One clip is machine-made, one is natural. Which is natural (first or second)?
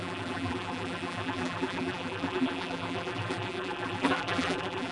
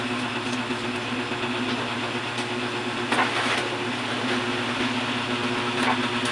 second